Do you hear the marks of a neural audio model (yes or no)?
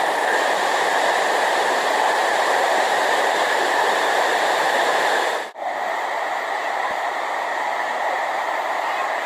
yes